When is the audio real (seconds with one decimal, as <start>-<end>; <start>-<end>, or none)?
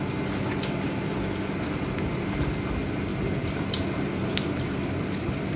0.0-5.6